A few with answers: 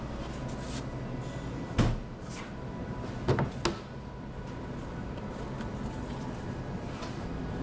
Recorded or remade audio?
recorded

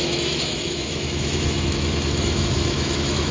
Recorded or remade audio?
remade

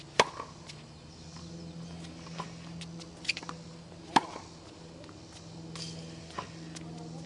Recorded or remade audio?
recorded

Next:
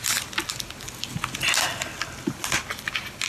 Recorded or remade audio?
recorded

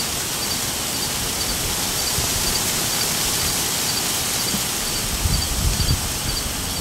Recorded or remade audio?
recorded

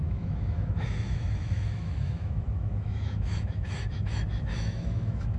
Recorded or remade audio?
remade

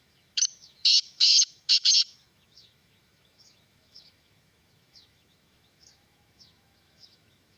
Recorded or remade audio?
remade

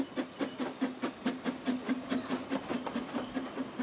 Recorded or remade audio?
recorded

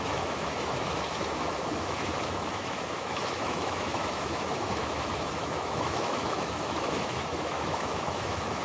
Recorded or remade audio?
remade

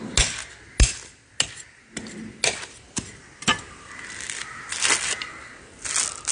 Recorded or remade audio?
recorded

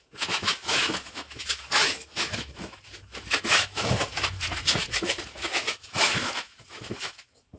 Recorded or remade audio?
remade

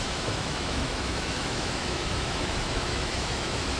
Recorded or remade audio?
remade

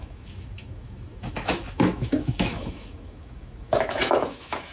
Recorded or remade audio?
remade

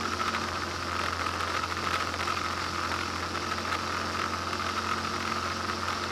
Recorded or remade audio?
recorded